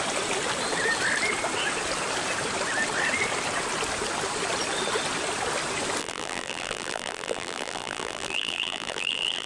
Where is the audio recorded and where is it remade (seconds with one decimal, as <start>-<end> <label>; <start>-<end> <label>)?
0.0-6.0 recorded; 6.0-9.5 remade